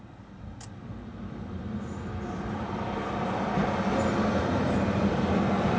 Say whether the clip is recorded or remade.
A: recorded